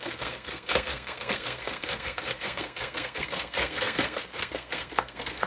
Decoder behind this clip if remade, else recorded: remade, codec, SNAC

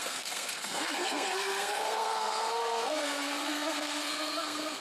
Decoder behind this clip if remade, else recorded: remade, codec, SNAC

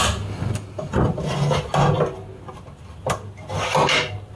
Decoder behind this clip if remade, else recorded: recorded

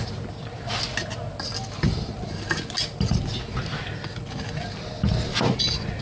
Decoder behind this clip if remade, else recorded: recorded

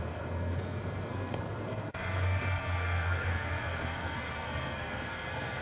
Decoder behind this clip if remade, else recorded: remade, codec, SNAC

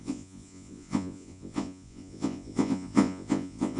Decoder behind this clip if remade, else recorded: remade, vocoder, Vocos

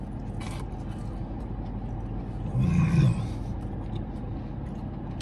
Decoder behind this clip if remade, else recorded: recorded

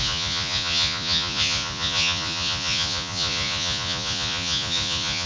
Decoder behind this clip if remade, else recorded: remade, vocoder, Vocos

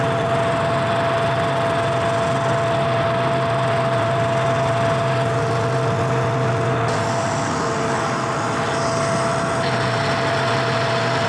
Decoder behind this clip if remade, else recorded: recorded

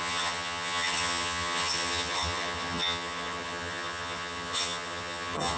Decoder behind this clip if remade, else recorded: remade, vocoder, HiFi-GAN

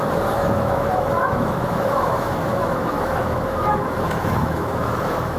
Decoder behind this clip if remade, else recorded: remade, autoencoder, DAC-VAE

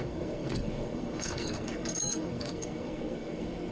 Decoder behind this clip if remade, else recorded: remade, codec, SNAC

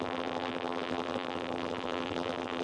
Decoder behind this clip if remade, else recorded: remade, vocoder, BigVGAN v2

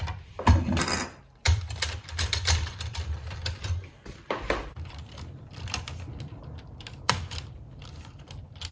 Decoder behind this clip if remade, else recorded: remade, vocoder, BigVGAN v2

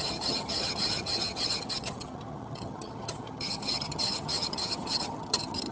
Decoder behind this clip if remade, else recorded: remade, vocoder, HiFi-GAN